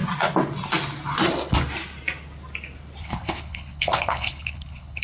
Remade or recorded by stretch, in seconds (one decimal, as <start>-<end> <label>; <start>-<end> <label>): 0.0-3.0 recorded; 3.0-5.0 remade